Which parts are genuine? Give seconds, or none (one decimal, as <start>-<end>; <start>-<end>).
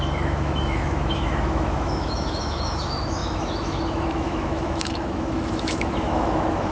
none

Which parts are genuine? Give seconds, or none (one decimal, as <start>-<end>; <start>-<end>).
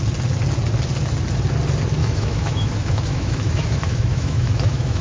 0.0-2.0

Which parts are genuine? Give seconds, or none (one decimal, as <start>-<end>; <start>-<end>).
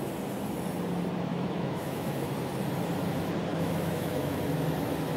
0.0-1.3; 2.3-3.5; 4.4-5.2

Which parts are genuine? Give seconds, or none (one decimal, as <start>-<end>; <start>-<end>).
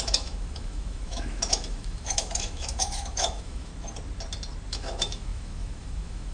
3.7-4.7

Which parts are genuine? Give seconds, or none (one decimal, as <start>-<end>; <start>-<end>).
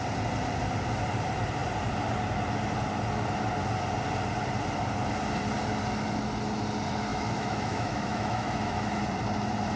0.0-7.1; 9.0-9.8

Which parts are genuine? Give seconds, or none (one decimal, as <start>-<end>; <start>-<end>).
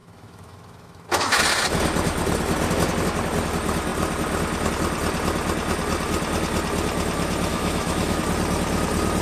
1.4-7.5; 8.2-9.2